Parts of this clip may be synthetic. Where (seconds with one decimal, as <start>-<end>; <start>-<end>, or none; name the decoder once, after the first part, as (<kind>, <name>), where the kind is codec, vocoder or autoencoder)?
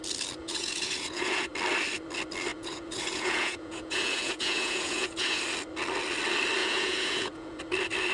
0.4-1.5 (vocoder, Vocos); 2.5-5.4; 6.6-7.6